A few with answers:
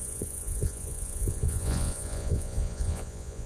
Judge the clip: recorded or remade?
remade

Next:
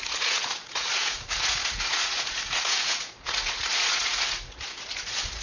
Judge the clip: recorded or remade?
remade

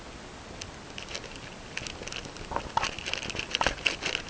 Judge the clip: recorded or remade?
recorded